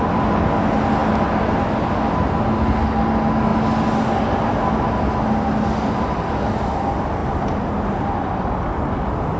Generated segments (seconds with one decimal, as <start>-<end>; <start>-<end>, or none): 7.2-8.1